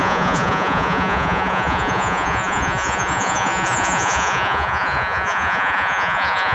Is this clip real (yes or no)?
no